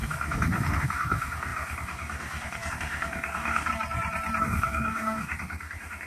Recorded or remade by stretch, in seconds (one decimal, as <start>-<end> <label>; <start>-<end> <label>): 0.0-3.7 remade; 3.7-4.4 recorded; 4.4-6.1 remade